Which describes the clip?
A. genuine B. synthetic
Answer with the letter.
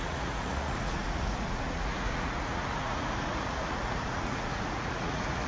B